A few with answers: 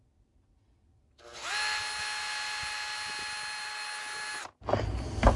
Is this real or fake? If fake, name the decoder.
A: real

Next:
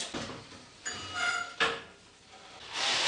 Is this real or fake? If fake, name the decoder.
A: real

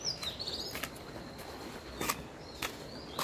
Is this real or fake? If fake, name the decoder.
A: real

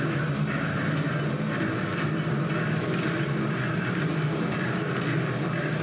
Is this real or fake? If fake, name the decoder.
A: real